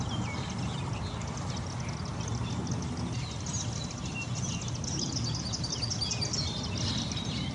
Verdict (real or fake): real